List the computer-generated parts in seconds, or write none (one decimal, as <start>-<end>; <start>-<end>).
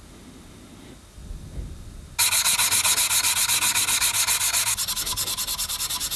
none